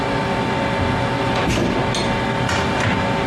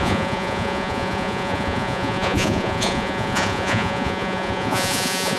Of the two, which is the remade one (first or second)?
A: second